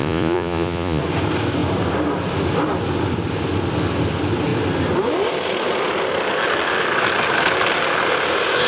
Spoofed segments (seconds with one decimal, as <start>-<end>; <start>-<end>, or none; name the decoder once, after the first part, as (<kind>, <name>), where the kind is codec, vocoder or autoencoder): 0.0-1.0 (vocoder, Vocos)